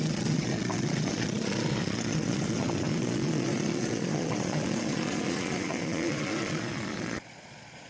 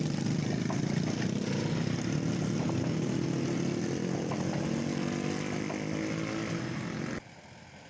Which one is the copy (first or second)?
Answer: first